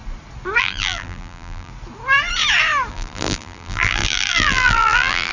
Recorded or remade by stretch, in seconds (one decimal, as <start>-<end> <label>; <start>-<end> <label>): 0.0-0.6 recorded; 0.6-1.7 remade; 1.7-2.9 recorded; 2.9-5.3 remade